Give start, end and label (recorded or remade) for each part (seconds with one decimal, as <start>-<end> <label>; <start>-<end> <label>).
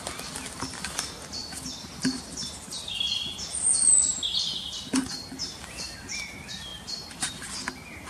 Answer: 0.0-8.1 recorded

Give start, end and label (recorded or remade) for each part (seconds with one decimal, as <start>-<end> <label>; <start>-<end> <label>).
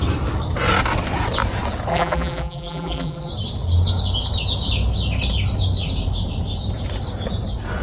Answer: 0.0-1.9 recorded; 1.9-3.3 remade; 3.3-7.8 recorded